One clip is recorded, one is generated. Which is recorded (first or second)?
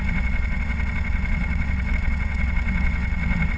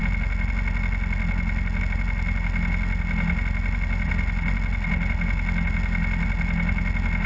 second